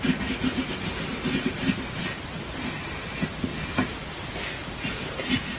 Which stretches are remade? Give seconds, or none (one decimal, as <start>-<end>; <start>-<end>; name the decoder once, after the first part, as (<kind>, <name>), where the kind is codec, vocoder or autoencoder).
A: none